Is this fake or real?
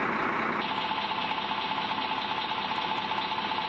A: real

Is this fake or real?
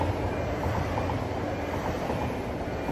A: real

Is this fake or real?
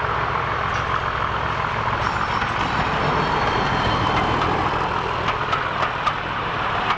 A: real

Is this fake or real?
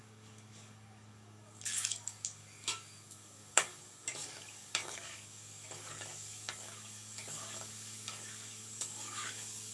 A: fake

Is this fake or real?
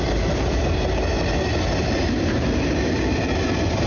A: real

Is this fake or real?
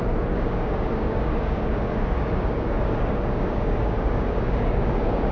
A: fake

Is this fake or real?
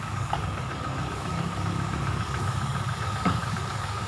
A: fake